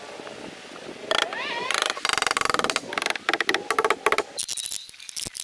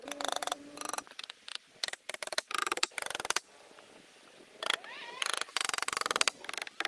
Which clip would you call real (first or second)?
first